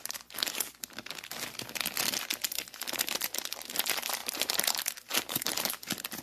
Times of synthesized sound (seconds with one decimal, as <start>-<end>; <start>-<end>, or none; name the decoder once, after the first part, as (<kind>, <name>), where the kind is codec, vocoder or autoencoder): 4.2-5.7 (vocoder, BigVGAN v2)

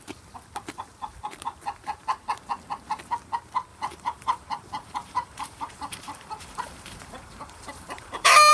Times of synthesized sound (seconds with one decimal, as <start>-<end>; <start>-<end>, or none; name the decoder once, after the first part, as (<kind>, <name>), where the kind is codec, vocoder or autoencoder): 3.7-8.5 (vocoder, BigVGAN v2)

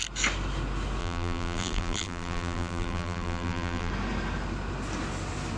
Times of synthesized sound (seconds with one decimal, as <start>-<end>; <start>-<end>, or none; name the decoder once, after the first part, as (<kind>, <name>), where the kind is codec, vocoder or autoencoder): 1.0-3.9 (vocoder, BigVGAN v2)